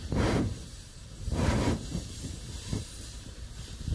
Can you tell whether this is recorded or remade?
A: remade